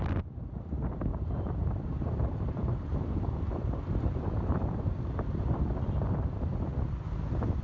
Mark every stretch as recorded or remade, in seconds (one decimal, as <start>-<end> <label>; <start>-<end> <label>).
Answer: 0.0-1.1 recorded; 1.1-5.6 remade; 5.6-7.6 recorded